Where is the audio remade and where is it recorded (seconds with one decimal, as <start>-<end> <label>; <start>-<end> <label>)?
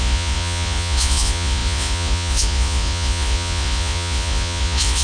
0.0-5.0 remade